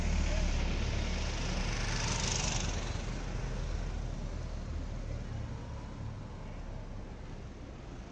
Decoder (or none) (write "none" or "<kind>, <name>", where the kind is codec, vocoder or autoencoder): none